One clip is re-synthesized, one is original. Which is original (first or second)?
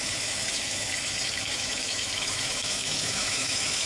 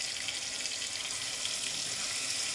second